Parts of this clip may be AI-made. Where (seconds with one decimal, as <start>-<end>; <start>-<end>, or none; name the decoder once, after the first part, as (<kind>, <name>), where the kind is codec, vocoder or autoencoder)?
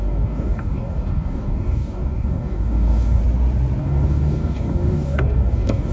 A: 0.0-3.2 (codec, DAC); 3.8-5.9